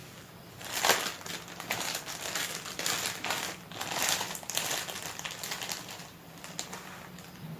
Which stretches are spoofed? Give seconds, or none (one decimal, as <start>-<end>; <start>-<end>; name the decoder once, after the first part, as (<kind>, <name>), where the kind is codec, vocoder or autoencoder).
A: 0.0-0.8 (vocoder, BigVGAN v2)